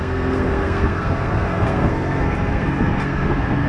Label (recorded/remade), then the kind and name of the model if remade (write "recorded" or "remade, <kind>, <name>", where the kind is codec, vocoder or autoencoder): remade, codec, SNAC